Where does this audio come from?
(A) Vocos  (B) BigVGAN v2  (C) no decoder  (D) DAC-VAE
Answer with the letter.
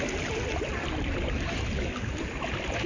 C